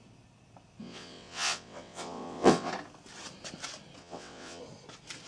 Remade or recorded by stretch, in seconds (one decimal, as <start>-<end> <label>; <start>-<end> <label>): 0.0-0.8 recorded; 0.8-2.7 remade; 2.7-4.0 recorded; 4.0-4.6 remade; 4.6-5.3 recorded